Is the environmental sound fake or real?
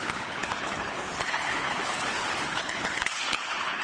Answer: fake